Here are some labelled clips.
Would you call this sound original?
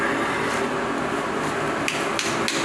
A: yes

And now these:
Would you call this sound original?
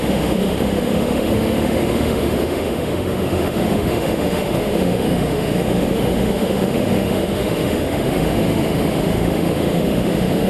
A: no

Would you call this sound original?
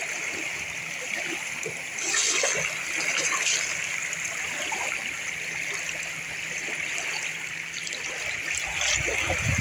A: no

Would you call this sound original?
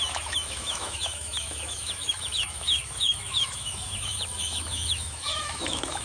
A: no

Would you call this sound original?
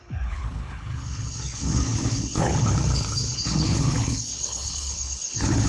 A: no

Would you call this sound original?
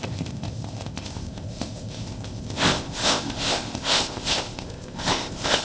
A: no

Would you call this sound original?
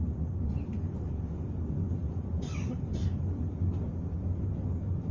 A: yes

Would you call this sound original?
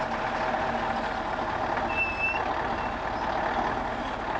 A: yes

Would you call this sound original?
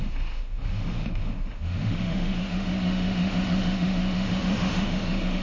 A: no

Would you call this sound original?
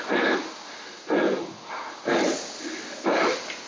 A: yes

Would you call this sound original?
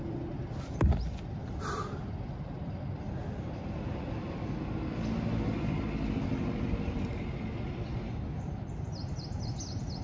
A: yes